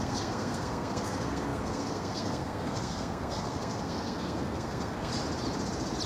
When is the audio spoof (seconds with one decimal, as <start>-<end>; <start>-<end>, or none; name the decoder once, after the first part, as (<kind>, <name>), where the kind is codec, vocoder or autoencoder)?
0.0-5.1 (codec, SNAC)